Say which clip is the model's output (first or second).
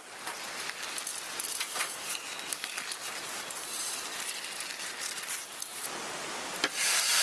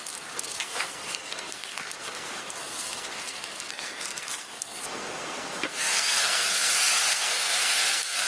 second